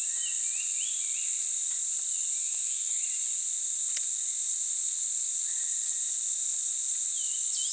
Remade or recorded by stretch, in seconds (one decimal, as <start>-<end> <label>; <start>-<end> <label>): 0.0-2.4 recorded; 2.4-3.0 remade; 3.0-7.7 recorded